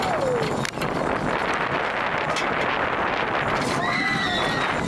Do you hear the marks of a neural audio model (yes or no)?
no